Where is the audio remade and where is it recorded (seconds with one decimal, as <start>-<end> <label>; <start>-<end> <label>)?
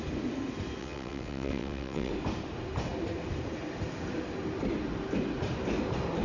0.0-0.8 recorded; 0.8-2.1 remade; 2.1-6.2 recorded